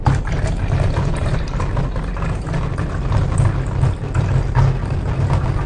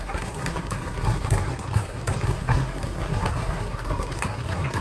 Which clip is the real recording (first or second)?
first